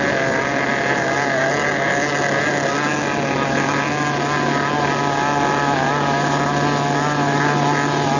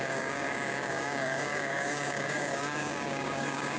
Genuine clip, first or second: first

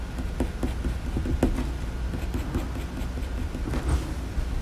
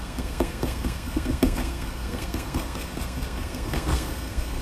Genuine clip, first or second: first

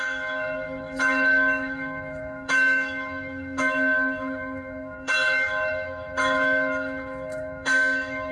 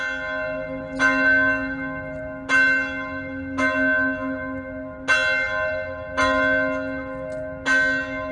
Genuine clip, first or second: second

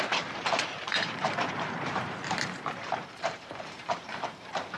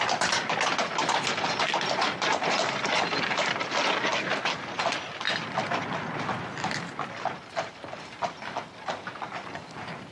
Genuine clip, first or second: second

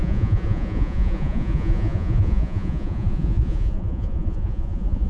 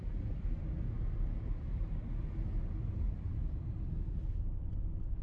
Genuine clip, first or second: second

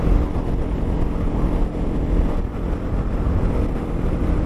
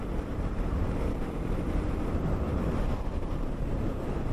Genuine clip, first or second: first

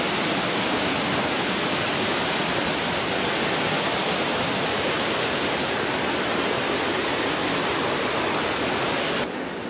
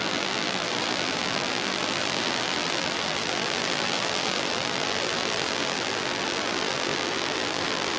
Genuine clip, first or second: first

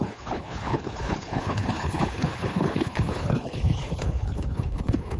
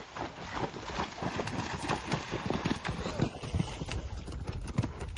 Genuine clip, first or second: second